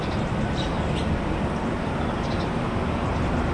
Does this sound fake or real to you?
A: real